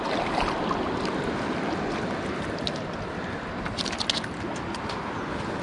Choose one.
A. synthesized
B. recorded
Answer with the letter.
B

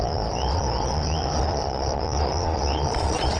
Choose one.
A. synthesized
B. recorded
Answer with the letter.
A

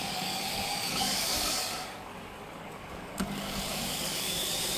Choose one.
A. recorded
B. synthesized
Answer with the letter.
B